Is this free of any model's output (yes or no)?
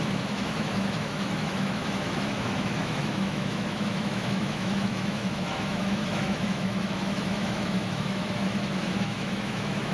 no